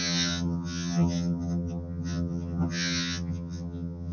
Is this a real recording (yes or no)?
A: no